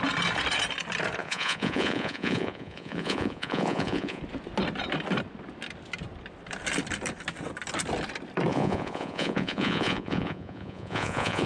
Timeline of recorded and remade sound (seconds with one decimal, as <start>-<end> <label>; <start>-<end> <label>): 0.0-1.2 recorded; 1.2-4.2 remade; 4.2-8.5 recorded; 8.5-11.5 remade